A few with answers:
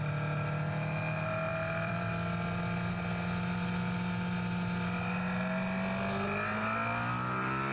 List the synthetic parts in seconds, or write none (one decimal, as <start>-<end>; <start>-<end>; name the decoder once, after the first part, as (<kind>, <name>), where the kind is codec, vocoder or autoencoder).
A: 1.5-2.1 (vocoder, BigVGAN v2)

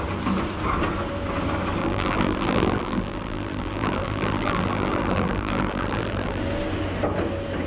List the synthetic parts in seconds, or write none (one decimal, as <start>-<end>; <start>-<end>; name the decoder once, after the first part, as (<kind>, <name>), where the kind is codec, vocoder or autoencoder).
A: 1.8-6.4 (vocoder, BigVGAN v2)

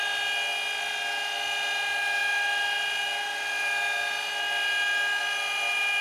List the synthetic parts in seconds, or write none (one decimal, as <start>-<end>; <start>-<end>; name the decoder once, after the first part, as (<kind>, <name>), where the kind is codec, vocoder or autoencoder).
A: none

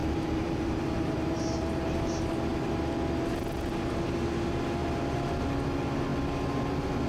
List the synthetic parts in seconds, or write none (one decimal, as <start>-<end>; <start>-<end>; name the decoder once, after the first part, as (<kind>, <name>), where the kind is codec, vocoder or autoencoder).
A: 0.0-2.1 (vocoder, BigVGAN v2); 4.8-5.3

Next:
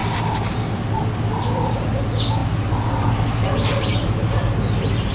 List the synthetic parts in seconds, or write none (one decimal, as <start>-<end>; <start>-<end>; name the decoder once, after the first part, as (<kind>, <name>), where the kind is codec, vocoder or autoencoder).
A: none

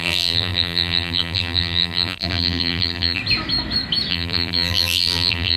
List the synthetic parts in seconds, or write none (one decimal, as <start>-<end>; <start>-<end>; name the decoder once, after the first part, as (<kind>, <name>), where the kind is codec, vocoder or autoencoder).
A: 0.0-3.2 (vocoder, BigVGAN v2); 4.1-5.6